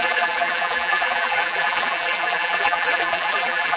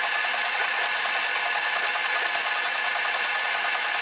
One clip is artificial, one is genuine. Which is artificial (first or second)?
first